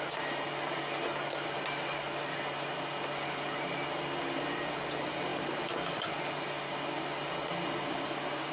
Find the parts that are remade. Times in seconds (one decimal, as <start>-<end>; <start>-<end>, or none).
none

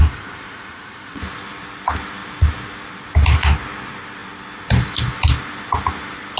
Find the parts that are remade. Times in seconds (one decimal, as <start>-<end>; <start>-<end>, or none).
0.0-1.2

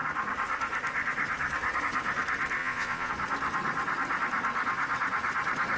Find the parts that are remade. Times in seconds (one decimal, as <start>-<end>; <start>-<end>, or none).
2.6-3.1

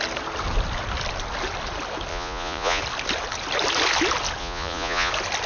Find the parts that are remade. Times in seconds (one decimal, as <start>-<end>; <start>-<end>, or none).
2.1-2.8; 4.4-5.1

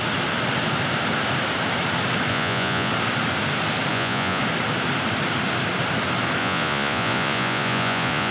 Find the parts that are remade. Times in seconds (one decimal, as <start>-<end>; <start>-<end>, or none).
2.3-2.9; 3.9-4.4; 6.4-8.3

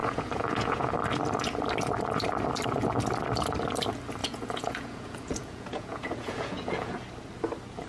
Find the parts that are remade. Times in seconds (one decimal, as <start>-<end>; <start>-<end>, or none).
0.0-0.9; 4.2-7.0